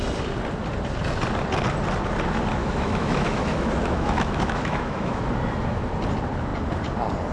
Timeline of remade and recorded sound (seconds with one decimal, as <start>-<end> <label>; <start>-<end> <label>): 0.0-2.6 recorded; 2.6-5.2 remade; 5.2-7.3 recorded